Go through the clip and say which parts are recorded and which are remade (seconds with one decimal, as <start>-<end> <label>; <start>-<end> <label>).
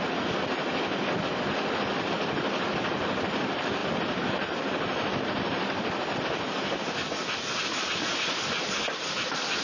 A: 0.0-3.8 recorded; 3.8-7.6 remade; 7.6-9.6 recorded